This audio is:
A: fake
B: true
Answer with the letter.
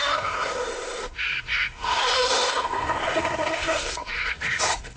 A